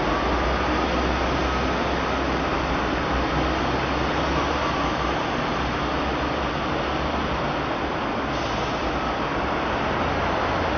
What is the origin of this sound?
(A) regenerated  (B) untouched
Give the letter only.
B